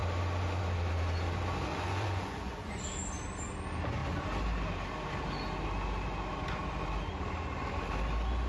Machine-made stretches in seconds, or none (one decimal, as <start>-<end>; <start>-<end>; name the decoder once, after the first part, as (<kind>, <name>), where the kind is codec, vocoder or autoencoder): 1.7-2.8 (vocoder, Vocos)